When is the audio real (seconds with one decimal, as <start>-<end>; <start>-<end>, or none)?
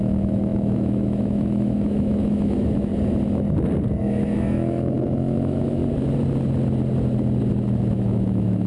2.9-4.0; 5.8-7.9